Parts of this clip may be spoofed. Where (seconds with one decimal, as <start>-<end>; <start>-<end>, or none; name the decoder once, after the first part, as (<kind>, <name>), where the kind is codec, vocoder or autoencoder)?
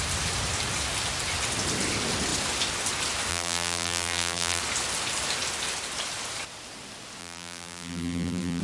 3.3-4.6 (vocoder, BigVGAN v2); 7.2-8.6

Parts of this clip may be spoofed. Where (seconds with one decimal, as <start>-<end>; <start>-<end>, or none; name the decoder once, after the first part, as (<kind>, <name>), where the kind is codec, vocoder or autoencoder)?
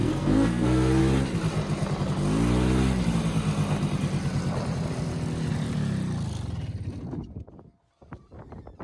0.0-1.0 (codec, SNAC)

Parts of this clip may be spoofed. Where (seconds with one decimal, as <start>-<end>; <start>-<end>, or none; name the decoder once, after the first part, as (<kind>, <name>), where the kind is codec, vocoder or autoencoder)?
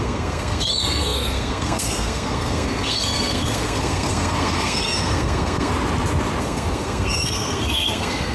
0.0-5.7 (codec, SNAC); 6.4-8.3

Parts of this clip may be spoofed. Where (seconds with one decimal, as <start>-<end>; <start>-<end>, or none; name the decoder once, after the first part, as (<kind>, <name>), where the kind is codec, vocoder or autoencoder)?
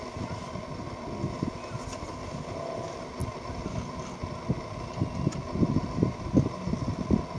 none